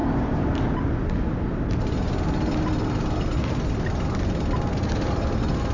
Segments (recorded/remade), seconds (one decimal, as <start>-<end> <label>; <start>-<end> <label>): 0.0-5.7 recorded